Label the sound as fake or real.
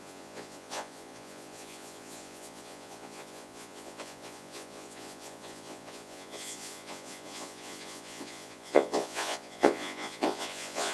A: fake